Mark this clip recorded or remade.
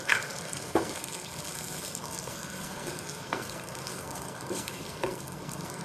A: remade